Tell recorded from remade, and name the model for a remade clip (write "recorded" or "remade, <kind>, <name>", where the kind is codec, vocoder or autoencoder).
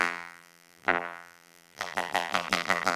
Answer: remade, vocoder, BigVGAN v2